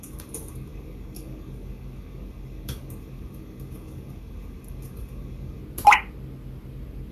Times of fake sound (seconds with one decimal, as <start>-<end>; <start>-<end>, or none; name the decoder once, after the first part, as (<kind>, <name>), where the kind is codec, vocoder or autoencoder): 0.0-5.6 (codec, DAC)